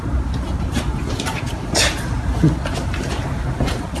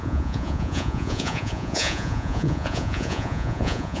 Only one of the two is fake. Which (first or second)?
second